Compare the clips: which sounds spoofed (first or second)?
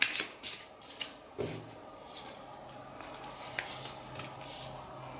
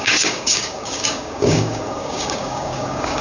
second